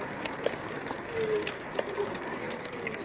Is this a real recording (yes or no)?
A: no